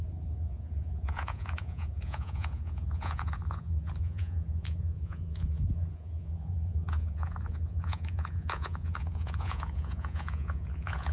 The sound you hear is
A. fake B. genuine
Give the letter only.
A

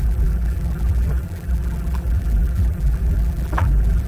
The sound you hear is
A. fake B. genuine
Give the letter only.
A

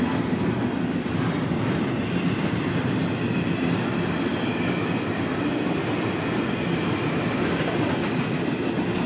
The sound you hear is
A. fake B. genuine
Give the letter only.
B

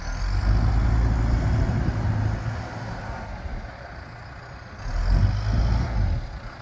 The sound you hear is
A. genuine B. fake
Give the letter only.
A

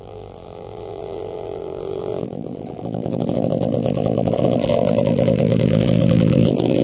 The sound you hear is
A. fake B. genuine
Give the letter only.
A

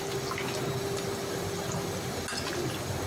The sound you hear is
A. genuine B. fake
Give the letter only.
A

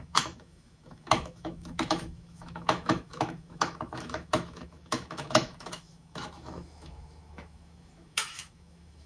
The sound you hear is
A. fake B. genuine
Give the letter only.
A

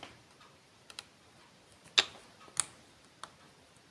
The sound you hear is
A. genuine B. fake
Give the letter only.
A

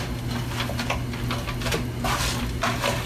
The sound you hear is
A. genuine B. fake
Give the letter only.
A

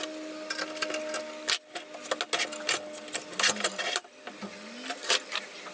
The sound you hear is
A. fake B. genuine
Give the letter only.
B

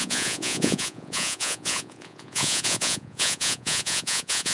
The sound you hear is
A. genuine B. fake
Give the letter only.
B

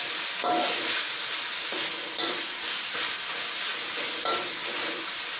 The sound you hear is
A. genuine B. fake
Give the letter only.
A